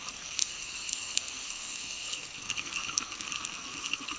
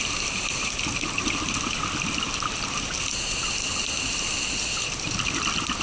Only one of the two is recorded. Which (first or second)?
second